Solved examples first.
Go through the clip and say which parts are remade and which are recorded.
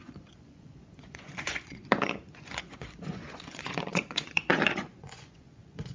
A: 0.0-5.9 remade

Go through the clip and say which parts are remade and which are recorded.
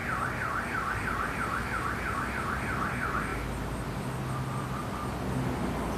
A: 0.0-2.3 remade; 2.3-6.0 recorded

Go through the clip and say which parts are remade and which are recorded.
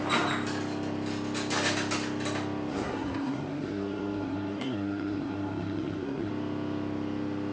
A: 0.0-2.7 recorded; 2.7-6.3 remade; 6.3-7.5 recorded